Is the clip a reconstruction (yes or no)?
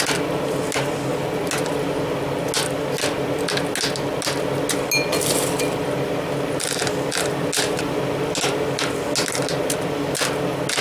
no